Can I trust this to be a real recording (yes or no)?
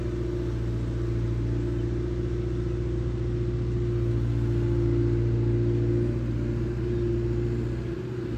yes